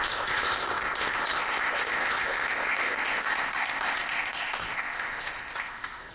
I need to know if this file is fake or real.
fake